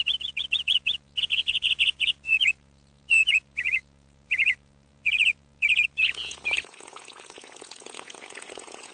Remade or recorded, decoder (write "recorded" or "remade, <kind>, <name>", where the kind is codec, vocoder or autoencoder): remade, vocoder, Vocos